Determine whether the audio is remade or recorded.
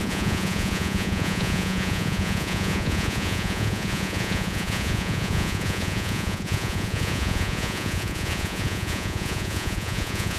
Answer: remade